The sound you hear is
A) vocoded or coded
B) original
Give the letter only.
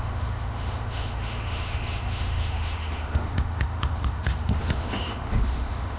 A